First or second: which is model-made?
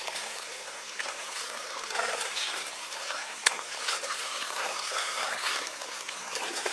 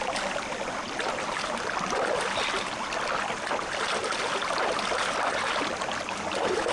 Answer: first